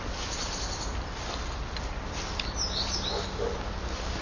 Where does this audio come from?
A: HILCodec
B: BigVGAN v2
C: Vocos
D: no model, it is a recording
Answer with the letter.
D